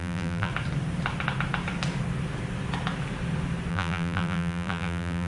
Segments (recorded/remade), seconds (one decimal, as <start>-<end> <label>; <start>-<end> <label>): 0.0-0.5 remade; 0.5-3.7 recorded; 3.7-5.3 remade